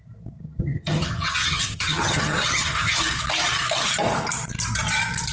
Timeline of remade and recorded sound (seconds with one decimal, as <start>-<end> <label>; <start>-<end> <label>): 0.0-0.4 recorded; 0.4-3.0 remade; 3.0-5.3 recorded